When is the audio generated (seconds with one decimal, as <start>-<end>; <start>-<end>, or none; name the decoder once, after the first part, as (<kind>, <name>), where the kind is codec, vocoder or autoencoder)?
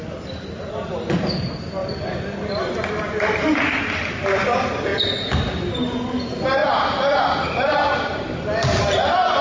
none